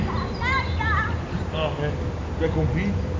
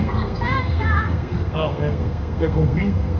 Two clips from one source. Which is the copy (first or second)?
second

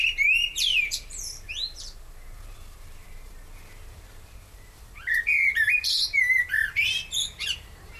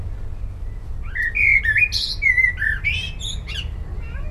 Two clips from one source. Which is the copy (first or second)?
first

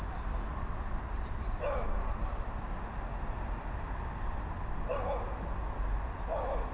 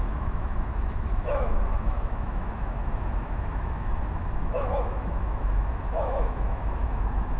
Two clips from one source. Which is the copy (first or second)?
second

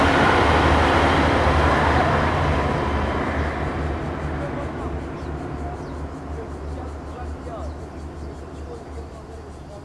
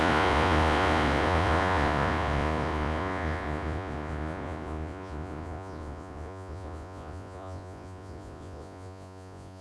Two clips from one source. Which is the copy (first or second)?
second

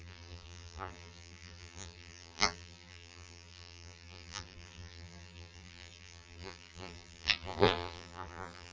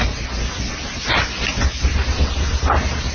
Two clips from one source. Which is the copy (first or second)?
first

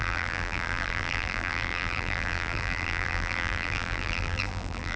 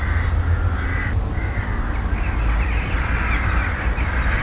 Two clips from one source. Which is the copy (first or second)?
first